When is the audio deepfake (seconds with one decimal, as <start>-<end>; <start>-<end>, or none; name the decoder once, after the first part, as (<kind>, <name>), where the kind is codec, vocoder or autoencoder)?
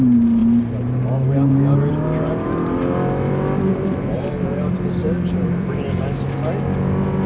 0.4-1.9 (vocoder, BigVGAN v2); 3.7-4.3; 5.0-5.7